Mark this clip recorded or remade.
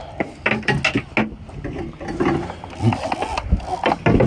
recorded